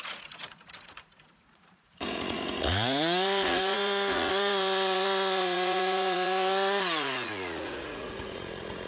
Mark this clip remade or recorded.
remade